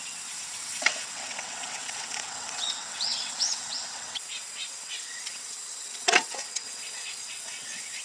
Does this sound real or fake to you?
fake